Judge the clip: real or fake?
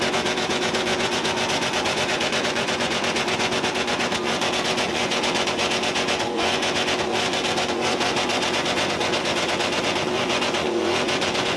fake